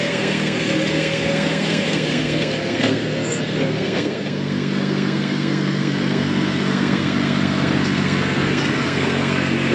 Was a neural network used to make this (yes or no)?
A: yes